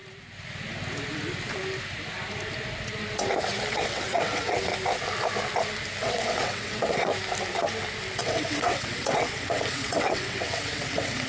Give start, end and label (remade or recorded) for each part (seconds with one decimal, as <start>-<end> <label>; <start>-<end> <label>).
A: 0.0-3.7 recorded; 3.7-4.7 remade; 4.7-6.0 recorded; 6.0-7.1 remade; 7.1-8.2 recorded; 8.2-11.3 remade